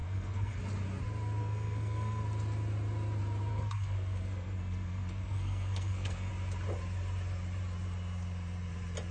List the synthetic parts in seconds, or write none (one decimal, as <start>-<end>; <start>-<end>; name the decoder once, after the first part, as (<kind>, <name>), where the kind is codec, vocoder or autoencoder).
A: 0.0-0.6 (codec, SNAC); 1.4-2.2; 3.5-6.3